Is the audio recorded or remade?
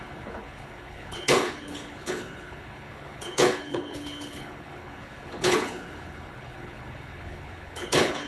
remade